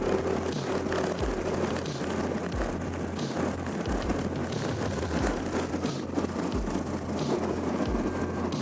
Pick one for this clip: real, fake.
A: real